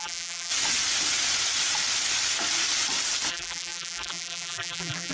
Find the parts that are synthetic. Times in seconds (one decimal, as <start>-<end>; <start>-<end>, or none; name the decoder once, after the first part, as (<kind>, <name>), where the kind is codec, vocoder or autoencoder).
0.0-0.5 (vocoder, BigVGAN v2); 3.3-5.1